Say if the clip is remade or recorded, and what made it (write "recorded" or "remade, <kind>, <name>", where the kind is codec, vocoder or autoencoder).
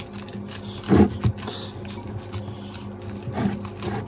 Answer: recorded